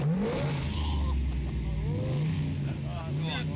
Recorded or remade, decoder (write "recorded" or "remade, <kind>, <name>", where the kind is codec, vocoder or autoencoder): recorded